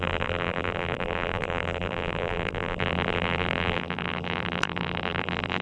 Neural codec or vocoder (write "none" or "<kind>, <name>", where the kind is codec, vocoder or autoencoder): vocoder, BigVGAN v2